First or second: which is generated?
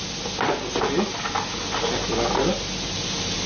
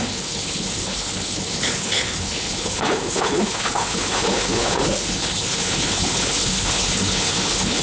second